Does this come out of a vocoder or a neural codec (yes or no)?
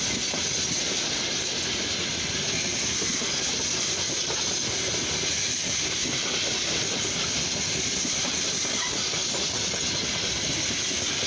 no